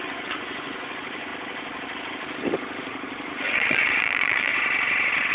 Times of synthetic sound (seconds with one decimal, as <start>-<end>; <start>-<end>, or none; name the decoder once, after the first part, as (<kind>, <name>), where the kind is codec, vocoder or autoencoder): 0.0-1.3 (vocoder, Vocos); 3.3-4.5